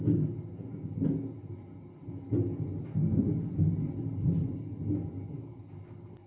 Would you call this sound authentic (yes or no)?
yes